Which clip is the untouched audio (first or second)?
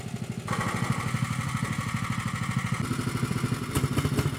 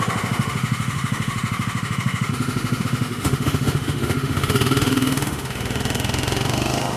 first